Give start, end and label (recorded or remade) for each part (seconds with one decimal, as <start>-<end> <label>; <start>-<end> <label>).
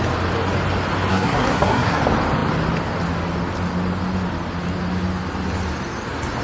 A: 0.0-1.1 recorded; 1.1-2.0 remade; 2.0-6.4 recorded